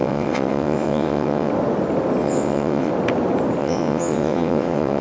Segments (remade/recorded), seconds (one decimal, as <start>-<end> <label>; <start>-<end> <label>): 0.0-1.5 remade; 1.5-2.2 recorded; 2.2-2.9 remade; 2.9-3.6 recorded; 3.6-5.0 remade